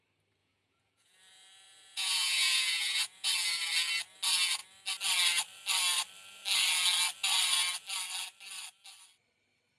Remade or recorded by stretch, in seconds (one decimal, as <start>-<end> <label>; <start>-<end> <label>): 0.0-0.4 recorded; 0.4-3.3 remade; 3.3-9.8 recorded